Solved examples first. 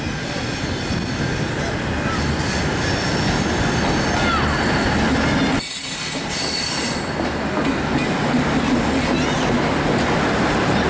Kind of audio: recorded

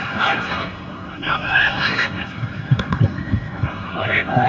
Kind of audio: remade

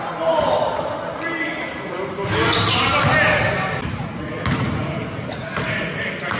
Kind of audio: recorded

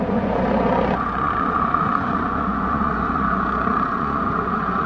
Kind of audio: remade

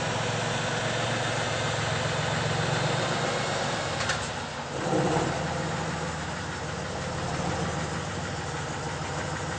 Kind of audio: recorded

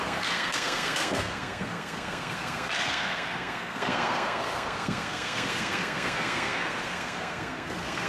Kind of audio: remade